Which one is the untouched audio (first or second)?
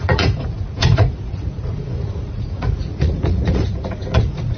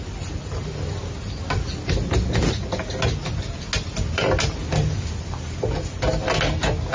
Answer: second